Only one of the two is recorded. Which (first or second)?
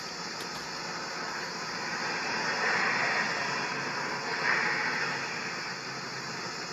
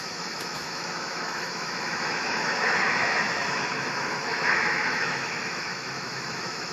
first